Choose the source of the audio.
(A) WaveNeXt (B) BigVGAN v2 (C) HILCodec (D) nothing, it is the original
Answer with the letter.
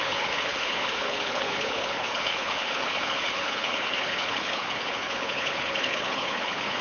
C